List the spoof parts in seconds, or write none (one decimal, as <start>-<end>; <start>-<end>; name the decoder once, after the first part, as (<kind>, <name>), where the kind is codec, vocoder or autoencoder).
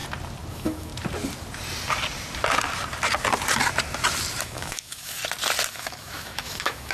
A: 0.5-0.9 (autoencoder, DAC-VAE); 4.4-5.2; 5.7-6.9